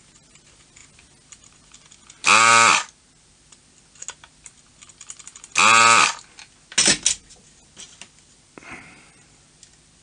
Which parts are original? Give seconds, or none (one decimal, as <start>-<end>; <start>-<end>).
0.0-10.0